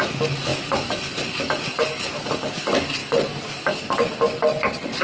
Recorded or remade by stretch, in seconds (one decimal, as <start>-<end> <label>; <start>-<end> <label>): 0.0-5.0 recorded